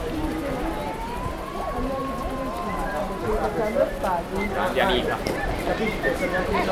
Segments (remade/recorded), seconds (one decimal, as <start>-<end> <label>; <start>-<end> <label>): 0.0-6.7 recorded